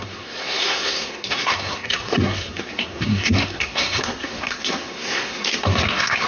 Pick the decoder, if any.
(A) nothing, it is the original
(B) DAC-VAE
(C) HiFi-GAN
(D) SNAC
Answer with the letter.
D